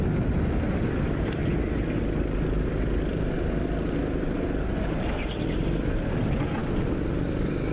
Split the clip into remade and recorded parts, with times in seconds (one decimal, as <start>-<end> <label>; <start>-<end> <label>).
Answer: 0.0-7.7 recorded